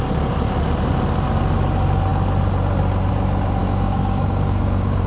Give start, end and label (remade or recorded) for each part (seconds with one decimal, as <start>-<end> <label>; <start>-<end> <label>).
0.0-3.6 recorded; 3.6-5.1 remade